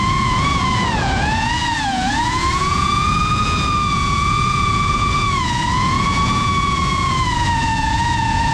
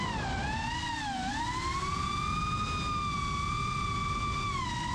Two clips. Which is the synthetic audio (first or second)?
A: first